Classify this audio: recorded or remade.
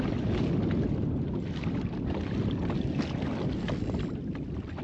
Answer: recorded